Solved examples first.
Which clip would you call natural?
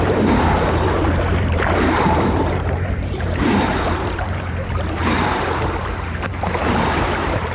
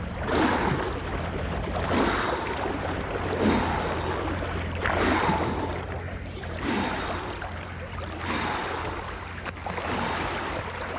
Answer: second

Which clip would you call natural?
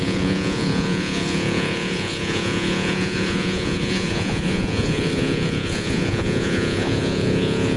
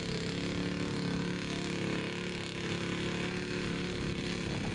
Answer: second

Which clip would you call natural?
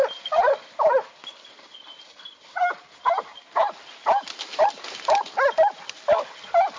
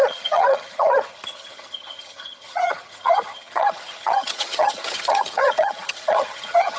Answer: first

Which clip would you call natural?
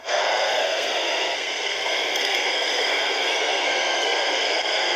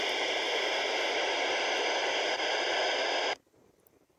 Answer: second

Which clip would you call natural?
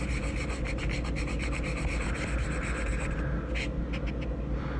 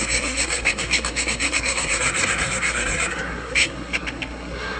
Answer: first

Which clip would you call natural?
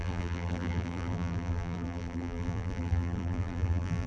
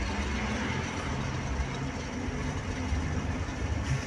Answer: second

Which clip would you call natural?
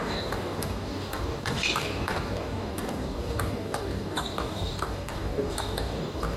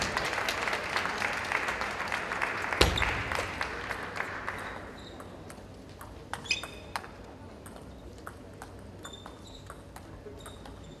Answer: second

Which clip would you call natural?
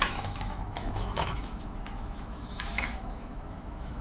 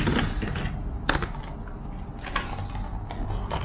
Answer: second